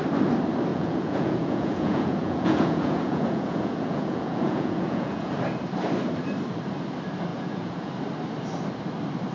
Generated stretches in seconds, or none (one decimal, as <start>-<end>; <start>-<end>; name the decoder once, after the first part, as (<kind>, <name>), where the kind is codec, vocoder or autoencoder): 0.7-5.3 (vocoder, Vocos); 7.3-7.9